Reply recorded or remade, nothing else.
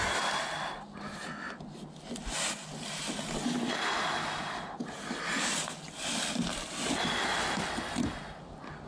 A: recorded